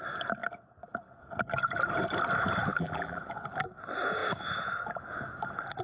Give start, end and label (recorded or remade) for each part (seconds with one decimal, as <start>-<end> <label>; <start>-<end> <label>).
0.0-2.7 recorded; 2.7-3.2 remade; 3.2-5.8 recorded